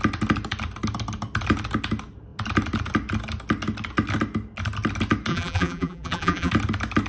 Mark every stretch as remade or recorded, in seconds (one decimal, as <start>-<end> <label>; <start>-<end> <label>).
0.0-5.3 recorded; 5.3-6.5 remade; 6.5-7.1 recorded